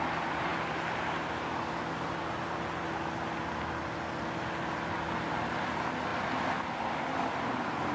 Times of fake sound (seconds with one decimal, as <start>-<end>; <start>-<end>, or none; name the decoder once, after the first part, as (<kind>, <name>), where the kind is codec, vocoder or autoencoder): none